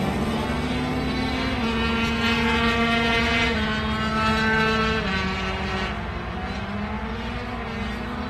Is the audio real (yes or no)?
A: yes